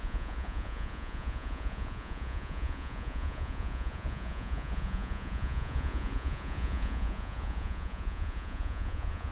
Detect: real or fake fake